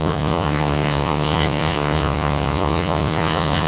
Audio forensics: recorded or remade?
remade